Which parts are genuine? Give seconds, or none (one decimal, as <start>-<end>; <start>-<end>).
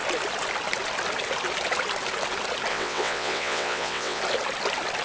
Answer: 0.0-2.7; 4.2-5.0